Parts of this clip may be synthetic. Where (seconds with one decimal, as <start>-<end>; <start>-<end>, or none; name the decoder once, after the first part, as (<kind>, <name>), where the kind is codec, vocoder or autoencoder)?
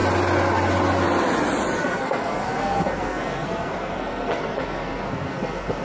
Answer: 1.8-5.8 (codec, SNAC)